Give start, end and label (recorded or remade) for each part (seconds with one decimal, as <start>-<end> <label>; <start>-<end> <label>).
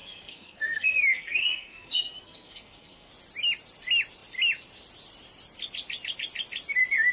0.0-3.1 remade; 3.1-7.1 recorded